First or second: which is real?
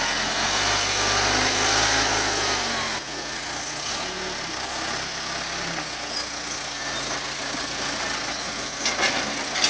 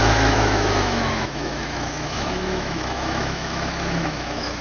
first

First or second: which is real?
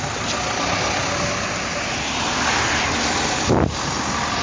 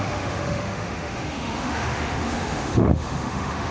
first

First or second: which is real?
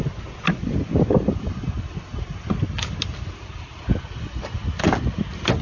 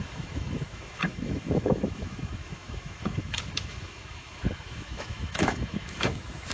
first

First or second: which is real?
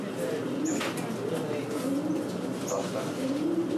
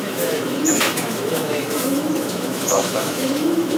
first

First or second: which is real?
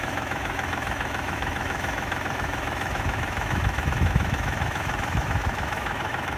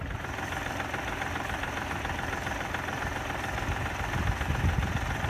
second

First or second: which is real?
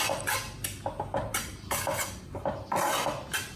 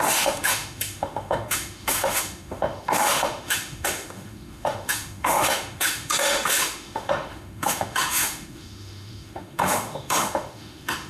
first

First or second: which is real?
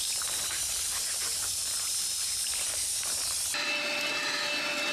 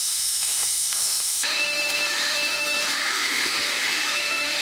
first